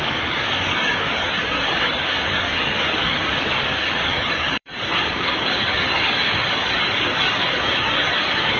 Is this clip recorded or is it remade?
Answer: remade